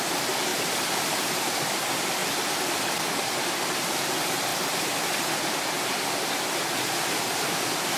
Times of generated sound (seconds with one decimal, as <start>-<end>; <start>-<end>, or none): 0.5-1.3; 2.2-3.4; 4.5-5.5